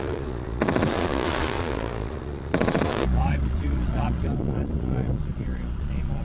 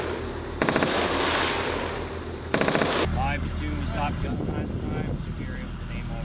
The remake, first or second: first